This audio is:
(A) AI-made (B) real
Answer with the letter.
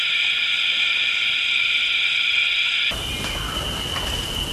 B